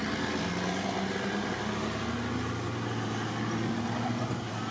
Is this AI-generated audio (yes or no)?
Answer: no